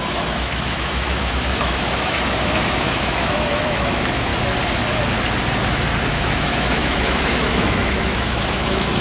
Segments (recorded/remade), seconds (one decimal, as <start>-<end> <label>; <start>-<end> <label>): 0.0-4.3 remade; 4.3-6.1 recorded; 6.1-9.0 remade